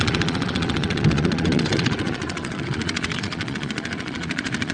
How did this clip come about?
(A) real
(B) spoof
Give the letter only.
B